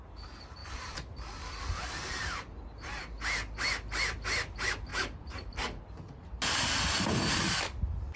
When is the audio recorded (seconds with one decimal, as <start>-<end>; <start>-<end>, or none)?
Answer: 0.0-0.6; 1.2-4.9; 5.8-8.2